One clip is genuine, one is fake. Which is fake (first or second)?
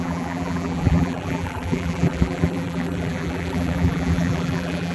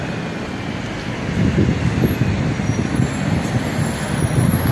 first